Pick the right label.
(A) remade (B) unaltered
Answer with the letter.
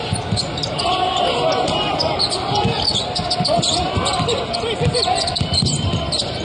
B